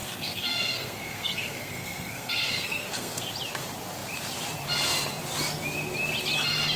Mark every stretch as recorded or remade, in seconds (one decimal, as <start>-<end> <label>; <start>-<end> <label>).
0.0-3.3 remade; 3.3-6.8 recorded